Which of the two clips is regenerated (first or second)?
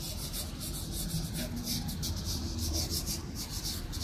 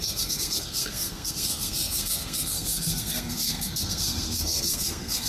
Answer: second